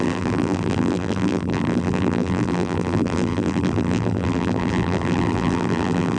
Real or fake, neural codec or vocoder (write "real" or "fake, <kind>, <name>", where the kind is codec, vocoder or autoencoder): fake, vocoder, BigVGAN v2